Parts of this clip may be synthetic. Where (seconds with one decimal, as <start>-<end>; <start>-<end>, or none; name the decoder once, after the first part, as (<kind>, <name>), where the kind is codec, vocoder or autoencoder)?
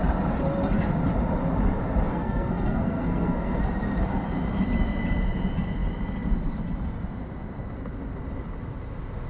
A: 2.1-3.6 (codec, SNAC)